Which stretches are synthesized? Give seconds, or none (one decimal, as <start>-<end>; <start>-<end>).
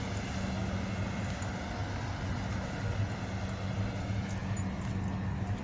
none